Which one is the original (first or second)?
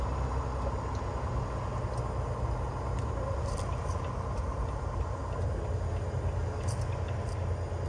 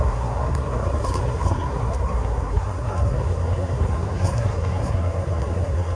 first